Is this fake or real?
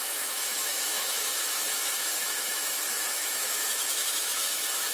fake